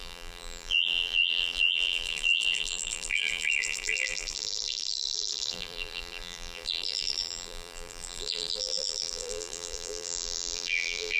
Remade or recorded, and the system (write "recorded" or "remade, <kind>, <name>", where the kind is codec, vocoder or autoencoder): remade, vocoder, BigVGAN v2